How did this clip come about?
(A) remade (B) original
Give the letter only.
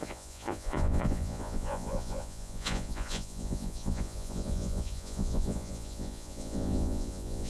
A